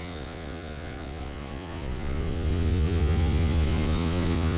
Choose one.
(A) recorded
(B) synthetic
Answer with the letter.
B